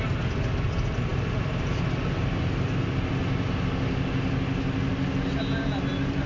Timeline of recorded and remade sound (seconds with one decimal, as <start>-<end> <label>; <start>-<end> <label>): 0.0-6.3 recorded